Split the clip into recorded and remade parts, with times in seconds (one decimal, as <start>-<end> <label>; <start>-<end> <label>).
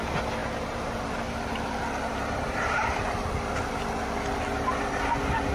0.0-0.4 recorded; 0.4-3.7 remade; 3.7-5.5 recorded